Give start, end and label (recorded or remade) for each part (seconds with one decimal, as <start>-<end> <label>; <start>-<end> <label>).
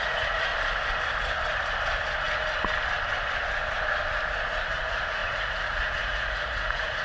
0.0-0.5 remade; 0.5-4.7 recorded; 4.7-7.0 remade